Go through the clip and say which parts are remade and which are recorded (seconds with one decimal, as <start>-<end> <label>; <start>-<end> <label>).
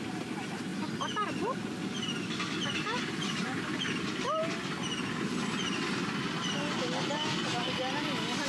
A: 0.0-8.5 recorded